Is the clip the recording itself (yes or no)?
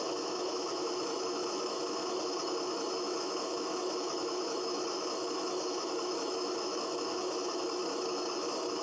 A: no